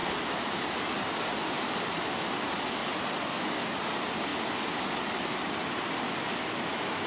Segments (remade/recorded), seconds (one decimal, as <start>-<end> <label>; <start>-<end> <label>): 0.0-7.1 recorded